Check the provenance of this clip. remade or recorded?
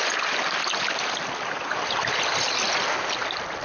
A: recorded